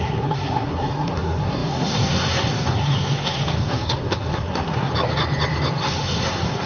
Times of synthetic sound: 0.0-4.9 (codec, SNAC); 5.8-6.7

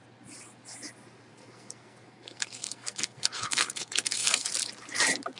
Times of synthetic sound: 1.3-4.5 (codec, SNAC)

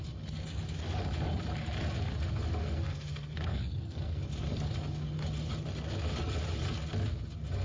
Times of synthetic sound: 2.6-4.2 (codec, SNAC)